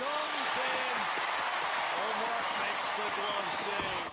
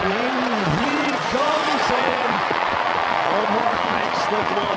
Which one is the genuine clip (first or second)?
first